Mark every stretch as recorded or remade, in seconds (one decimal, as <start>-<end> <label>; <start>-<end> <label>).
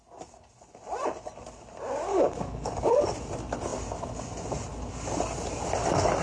0.0-2.1 recorded; 2.1-3.0 remade; 3.0-6.2 recorded